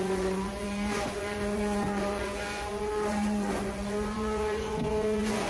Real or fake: fake